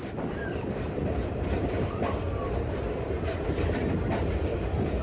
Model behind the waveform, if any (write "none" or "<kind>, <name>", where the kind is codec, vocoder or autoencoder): vocoder, BigVGAN v2